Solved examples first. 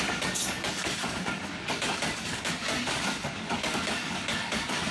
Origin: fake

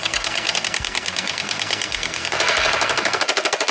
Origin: fake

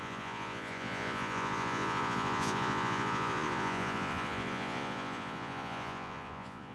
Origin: fake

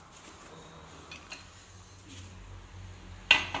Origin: real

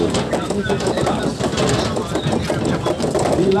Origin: real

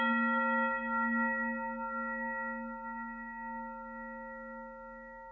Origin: real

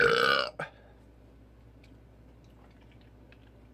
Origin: real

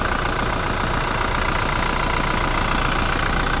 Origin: real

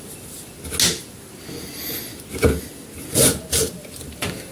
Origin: real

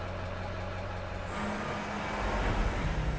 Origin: real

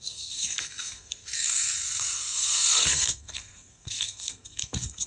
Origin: fake